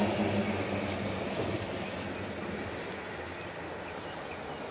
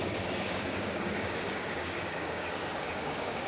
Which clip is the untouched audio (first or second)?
first